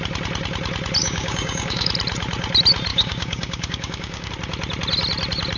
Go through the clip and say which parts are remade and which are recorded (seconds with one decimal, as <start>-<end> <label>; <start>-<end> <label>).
0.0-1.0 recorded; 1.0-1.9 remade; 1.9-2.9 recorded; 2.9-4.3 remade; 4.3-5.6 recorded